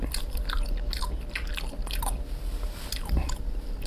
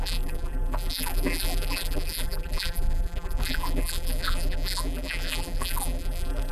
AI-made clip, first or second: second